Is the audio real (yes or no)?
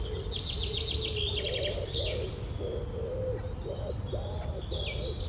yes